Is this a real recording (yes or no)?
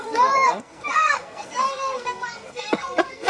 no